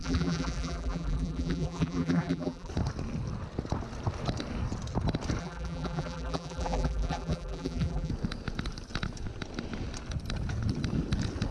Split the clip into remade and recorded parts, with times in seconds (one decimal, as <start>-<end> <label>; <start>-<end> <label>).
0.0-2.7 remade; 2.7-5.4 recorded; 5.4-8.1 remade; 8.1-11.5 recorded

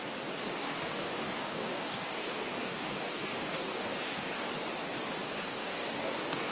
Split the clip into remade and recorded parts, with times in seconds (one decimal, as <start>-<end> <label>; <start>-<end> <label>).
0.0-0.6 recorded; 0.6-4.5 remade; 4.5-5.2 recorded; 5.2-6.5 remade

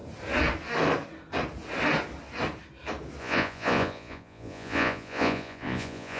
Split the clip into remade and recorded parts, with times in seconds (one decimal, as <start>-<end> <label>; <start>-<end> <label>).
0.0-3.2 recorded; 3.2-6.2 remade

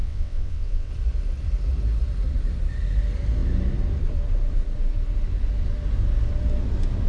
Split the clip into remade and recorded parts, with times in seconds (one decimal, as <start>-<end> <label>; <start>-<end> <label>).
0.0-0.9 remade; 0.9-7.1 recorded

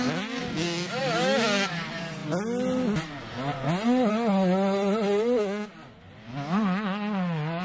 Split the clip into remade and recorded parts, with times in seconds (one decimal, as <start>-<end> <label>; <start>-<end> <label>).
0.0-0.4 recorded; 0.4-1.0 remade; 1.0-7.6 recorded

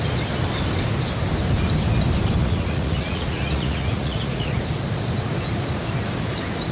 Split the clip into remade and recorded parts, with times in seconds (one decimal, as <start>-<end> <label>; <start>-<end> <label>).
0.0-2.4 recorded; 2.4-4.6 remade; 4.6-6.7 recorded